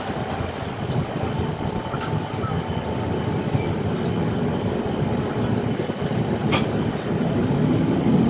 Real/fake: real